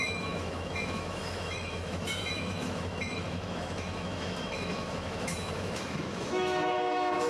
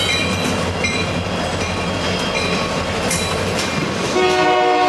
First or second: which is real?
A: second